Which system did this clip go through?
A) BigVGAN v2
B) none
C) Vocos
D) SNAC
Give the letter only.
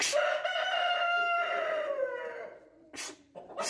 B